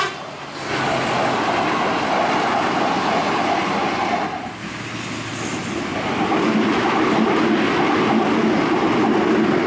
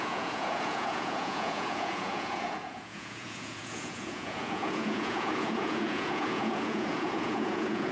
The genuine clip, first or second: first